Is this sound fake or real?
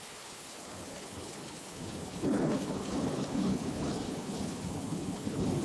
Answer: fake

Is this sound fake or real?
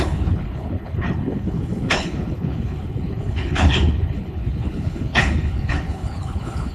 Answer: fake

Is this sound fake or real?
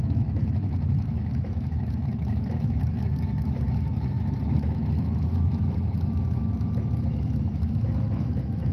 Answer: fake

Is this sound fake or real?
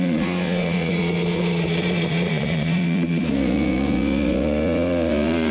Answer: fake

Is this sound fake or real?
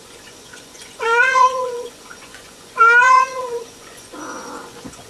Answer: fake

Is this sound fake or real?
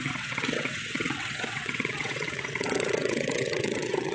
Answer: fake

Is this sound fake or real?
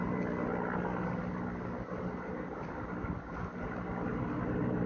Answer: real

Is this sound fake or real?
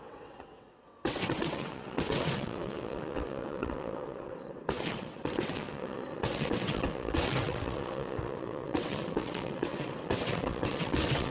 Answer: fake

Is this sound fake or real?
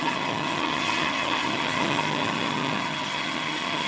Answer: fake